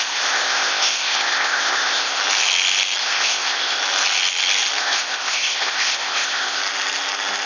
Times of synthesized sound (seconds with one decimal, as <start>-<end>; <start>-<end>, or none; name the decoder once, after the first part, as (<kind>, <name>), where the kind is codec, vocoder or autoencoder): 0.0-2.2 (codec, ZipCodec); 3.0-3.8; 4.8-6.6